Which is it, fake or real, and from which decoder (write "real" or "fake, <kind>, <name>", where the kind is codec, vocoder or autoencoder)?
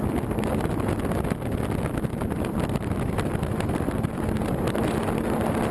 real